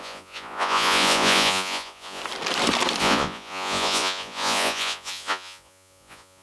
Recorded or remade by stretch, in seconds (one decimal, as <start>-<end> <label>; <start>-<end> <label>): 0.0-2.2 remade; 2.2-3.0 recorded; 3.0-6.4 remade